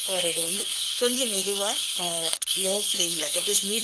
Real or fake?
fake